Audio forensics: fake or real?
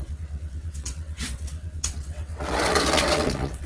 fake